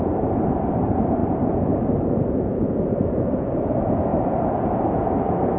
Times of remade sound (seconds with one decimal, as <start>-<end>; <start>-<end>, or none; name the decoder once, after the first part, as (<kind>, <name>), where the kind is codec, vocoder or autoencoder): none